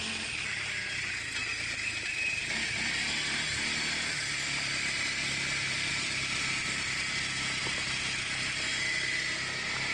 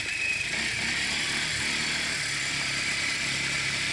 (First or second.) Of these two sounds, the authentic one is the first